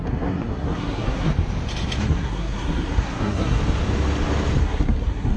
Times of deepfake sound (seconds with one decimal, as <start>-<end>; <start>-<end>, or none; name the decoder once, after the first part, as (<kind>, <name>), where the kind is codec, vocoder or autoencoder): 0.0-1.3 (codec, SNAC); 2.0-3.6; 4.6-5.4